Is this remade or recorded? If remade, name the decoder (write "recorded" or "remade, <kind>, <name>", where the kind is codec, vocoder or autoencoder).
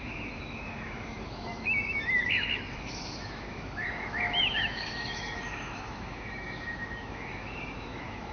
remade, autoencoder, DAC-VAE